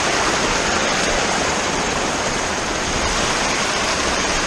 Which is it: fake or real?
fake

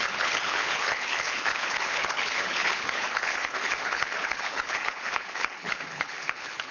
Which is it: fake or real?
fake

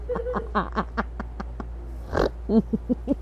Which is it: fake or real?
real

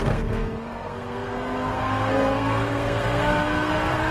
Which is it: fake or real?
fake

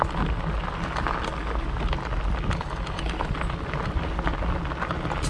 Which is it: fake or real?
real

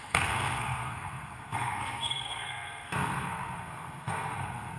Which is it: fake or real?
fake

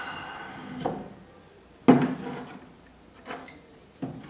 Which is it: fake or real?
real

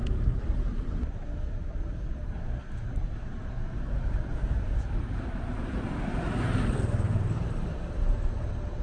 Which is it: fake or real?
fake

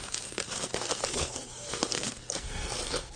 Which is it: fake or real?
fake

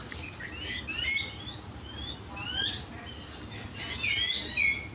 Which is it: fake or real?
real